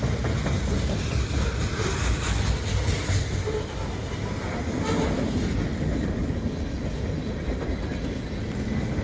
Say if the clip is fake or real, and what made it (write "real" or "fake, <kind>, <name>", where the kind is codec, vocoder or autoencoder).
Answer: real